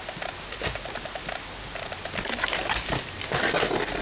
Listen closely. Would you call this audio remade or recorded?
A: recorded